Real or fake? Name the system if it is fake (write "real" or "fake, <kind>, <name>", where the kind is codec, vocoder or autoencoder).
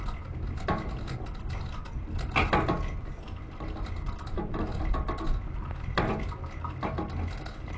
real